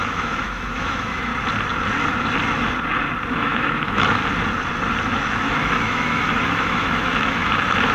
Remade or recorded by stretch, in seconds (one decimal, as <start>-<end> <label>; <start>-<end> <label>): 0.0-1.3 remade; 1.3-3.4 recorded; 3.4-4.2 remade; 4.2-5.2 recorded; 5.2-7.9 remade